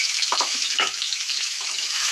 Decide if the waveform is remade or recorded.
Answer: remade